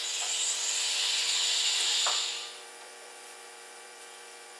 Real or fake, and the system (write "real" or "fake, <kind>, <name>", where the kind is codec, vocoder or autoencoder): fake, vocoder, Vocos